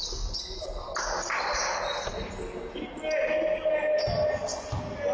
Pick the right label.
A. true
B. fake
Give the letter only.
A